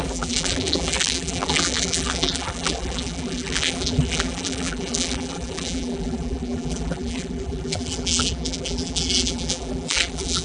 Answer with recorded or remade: remade